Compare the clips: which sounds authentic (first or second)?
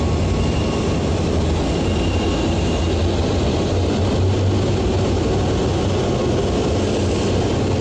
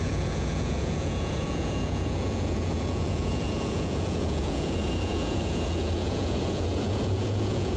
first